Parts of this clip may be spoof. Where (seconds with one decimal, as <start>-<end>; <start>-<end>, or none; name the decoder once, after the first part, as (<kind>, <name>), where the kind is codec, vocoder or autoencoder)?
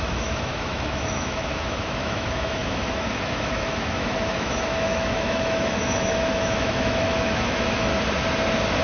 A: 0.0-7.9 (autoencoder, DAC-VAE)